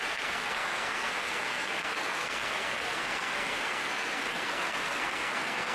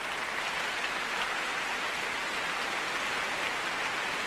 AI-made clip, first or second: first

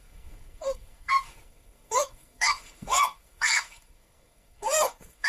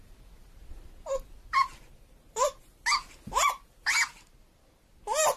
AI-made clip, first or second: first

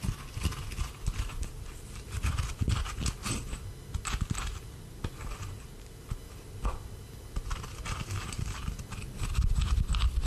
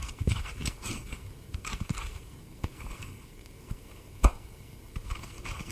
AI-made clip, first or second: second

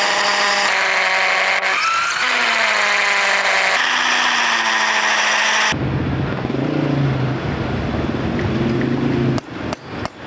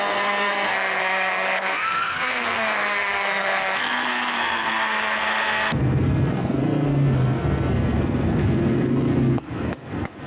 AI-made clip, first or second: second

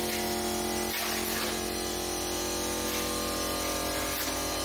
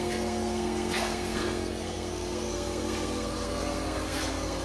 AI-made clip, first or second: second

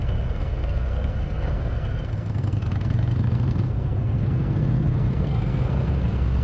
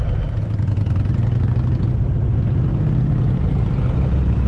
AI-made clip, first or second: first